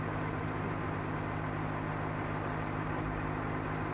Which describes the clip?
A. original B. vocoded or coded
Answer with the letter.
A